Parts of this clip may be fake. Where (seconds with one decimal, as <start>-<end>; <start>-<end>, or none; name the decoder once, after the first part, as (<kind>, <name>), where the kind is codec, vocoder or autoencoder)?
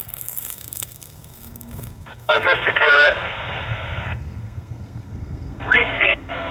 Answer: 0.0-6.5 (codec, SNAC)